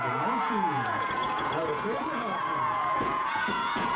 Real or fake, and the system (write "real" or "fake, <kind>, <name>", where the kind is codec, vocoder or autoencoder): fake, vocoder, Vocos